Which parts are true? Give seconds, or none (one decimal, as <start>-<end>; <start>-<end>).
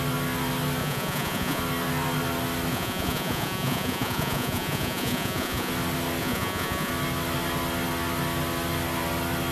0.0-0.8; 1.6-2.7; 5.7-6.2; 6.9-9.5